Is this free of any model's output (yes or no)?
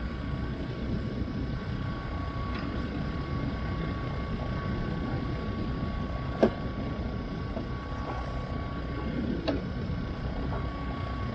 yes